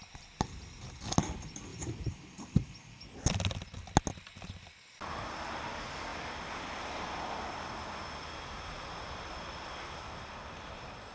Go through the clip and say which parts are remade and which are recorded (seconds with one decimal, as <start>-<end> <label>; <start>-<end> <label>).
0.0-1.7 recorded; 1.7-2.7 remade; 2.7-11.1 recorded